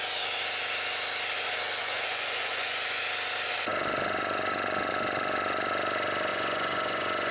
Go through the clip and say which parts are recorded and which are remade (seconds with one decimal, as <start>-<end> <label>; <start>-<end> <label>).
0.0-1.8 recorded; 1.8-3.0 remade; 3.0-6.3 recorded; 6.3-7.3 remade